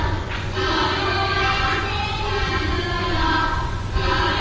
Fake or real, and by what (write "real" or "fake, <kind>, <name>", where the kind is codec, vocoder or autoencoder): fake, vocoder, Vocos